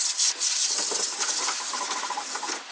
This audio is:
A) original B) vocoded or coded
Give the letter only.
A